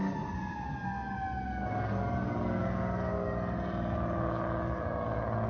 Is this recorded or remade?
recorded